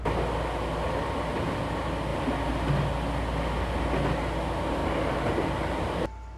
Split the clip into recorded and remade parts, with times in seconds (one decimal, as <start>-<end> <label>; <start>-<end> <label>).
0.0-6.4 recorded